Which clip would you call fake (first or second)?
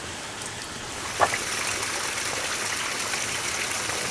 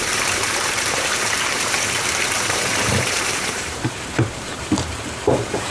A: second